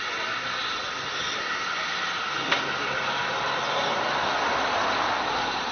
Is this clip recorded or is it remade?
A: recorded